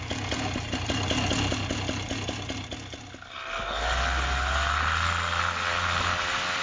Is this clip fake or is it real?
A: real